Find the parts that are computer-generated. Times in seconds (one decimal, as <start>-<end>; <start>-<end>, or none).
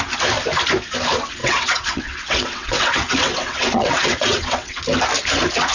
1.4-4.8